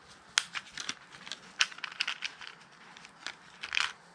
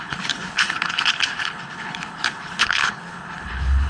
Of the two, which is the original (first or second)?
first